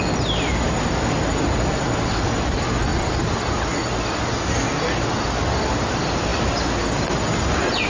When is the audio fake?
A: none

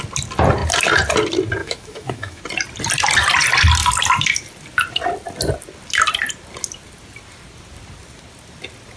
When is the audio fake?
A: 1.6-2.4 (autoencoder, DAC-VAE)

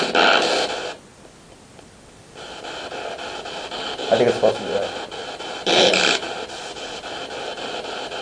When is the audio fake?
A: none

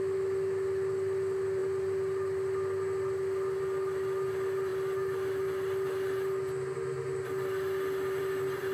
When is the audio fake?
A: none

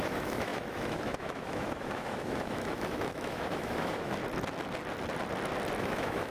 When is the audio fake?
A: 0.0-4.2 (autoencoder, DAC-VAE); 5.8-6.3